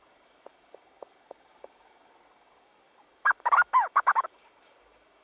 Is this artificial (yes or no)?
yes